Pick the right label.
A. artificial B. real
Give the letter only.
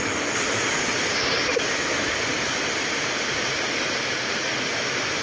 B